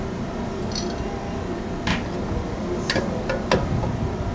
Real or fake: real